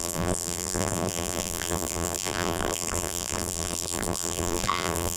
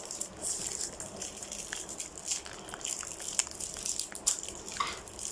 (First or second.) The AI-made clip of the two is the first